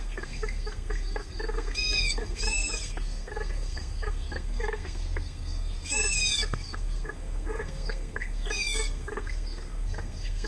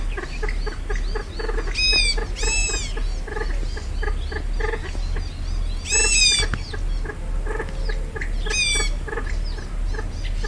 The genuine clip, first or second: second